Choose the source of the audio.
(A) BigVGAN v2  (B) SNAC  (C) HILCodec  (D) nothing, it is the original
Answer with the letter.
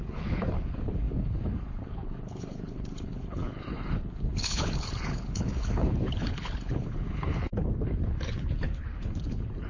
C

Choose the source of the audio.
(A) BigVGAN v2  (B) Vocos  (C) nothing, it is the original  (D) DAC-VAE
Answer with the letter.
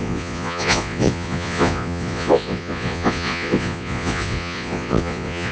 B